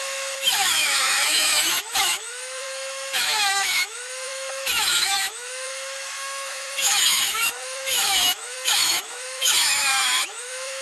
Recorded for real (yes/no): no